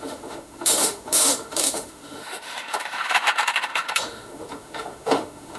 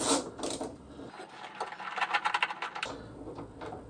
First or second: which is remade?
first